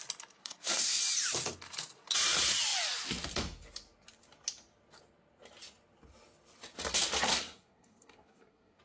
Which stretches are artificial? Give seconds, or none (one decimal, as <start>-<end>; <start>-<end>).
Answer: 0.4-1.0; 7.3-8.8